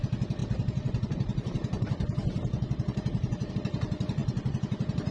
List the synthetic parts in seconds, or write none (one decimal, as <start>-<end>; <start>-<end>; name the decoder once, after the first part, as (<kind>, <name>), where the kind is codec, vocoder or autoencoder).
0.4-3.5 (vocoder, BigVGAN v2); 4.2-5.1